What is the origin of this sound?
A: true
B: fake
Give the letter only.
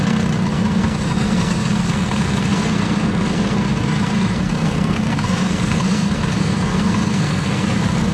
B